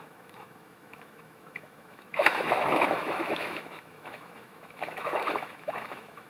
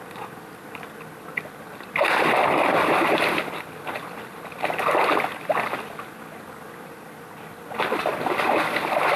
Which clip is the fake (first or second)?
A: first